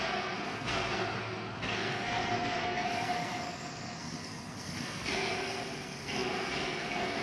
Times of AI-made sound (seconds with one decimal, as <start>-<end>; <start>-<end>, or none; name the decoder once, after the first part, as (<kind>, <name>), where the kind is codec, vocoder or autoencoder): 0.0-7.2 (codec, SNAC)